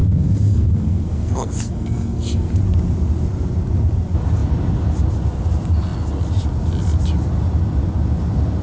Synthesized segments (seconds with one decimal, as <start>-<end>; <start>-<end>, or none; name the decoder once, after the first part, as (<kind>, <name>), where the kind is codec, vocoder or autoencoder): 0.0-2.5 (codec, SNAC)